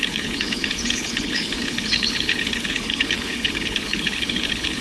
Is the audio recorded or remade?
remade